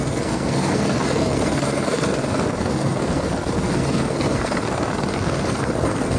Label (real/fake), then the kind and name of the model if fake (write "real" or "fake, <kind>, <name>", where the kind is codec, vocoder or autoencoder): fake, codec, SNAC